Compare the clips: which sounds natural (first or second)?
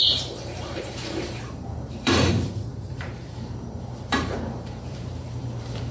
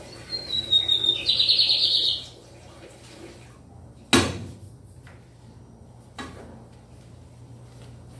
second